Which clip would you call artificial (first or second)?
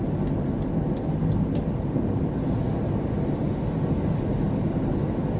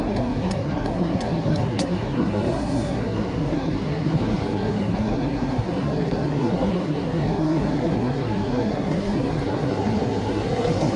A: second